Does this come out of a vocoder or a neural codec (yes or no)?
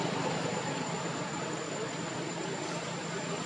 yes